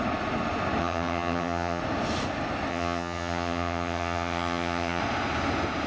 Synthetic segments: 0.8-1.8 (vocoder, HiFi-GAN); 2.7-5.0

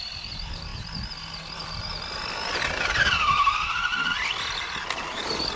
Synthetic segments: none

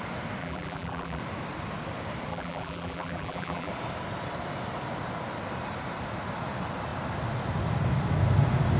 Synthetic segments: 0.4-1.2 (vocoder, BigVGAN v2); 2.3-3.7

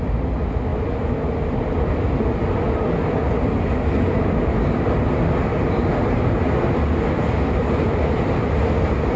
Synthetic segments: none